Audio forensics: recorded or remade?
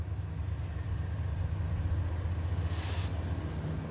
recorded